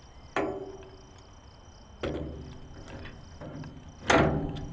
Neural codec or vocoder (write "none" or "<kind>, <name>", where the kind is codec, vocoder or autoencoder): none